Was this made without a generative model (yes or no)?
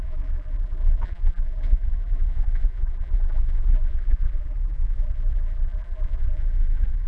no